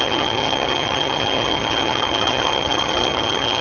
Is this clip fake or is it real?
fake